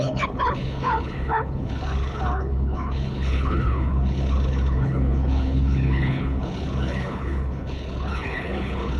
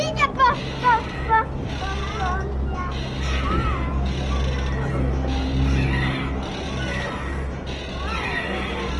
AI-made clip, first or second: first